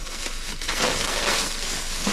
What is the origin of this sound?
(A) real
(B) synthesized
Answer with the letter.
B